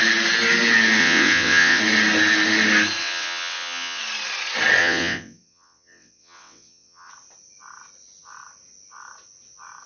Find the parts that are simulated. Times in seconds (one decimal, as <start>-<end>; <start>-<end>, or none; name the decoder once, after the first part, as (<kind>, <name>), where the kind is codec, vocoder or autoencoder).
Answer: 1.0-1.8 (vocoder, WaveNeXt); 3.0-4.0; 4.8-7.1